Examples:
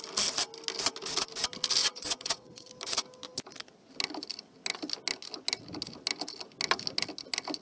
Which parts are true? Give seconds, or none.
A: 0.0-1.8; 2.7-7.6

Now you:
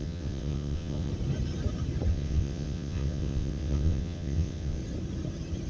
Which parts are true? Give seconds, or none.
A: 1.1-2.1; 4.8-5.7

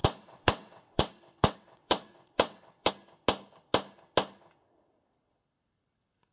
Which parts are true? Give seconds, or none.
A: 2.9-6.3

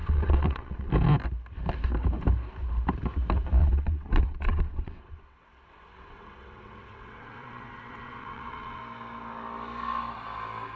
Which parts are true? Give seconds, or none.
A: 0.9-3.6; 8.8-10.8

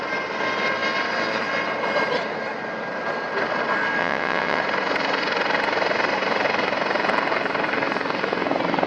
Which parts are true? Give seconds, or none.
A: 0.0-4.0; 4.6-8.9

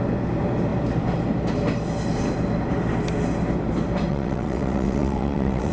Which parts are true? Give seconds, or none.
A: 0.0-4.1

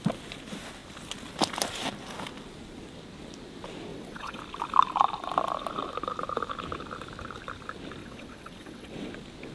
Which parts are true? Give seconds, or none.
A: 0.0-3.9; 4.4-8.0; 9.1-9.5